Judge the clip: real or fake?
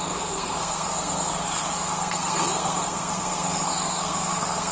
fake